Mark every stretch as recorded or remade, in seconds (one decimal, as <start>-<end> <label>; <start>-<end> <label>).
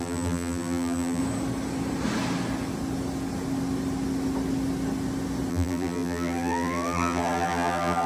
0.0-1.2 remade; 1.2-5.5 recorded; 5.5-8.1 remade